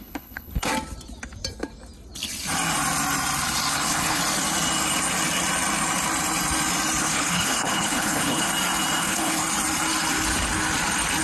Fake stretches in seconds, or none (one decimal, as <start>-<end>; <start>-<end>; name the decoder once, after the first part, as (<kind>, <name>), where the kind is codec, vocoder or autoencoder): 0.0-0.7 (codec, HILCodec); 3.7-4.2; 7.0-8.5; 9.0-9.4